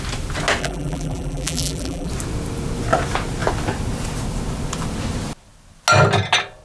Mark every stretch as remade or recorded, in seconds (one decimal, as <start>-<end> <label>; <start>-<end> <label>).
0.0-0.6 recorded; 0.6-2.1 remade; 2.1-6.6 recorded